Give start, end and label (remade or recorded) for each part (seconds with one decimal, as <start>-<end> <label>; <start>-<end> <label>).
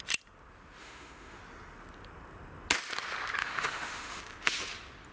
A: 0.0-0.8 recorded; 0.8-1.4 remade; 1.4-3.4 recorded; 3.4-4.2 remade; 4.2-5.1 recorded